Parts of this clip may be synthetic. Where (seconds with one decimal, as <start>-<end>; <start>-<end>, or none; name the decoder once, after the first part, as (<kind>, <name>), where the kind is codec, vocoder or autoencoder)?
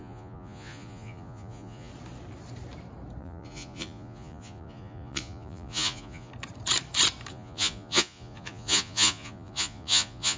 0.0-1.9 (vocoder, Vocos); 3.2-6.3; 7.3-10.4